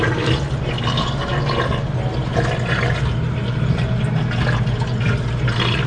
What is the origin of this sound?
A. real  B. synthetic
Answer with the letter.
A